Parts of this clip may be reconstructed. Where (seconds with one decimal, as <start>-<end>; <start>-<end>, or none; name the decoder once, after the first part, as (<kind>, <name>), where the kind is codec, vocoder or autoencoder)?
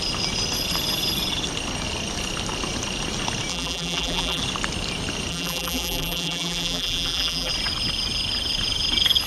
3.5-4.4 (vocoder, BigVGAN v2); 5.3-7.5